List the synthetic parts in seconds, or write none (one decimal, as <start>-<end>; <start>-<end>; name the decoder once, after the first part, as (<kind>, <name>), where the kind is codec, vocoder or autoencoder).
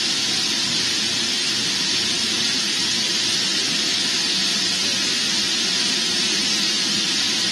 0.0-2.2 (vocoder, BigVGAN v2); 3.6-7.5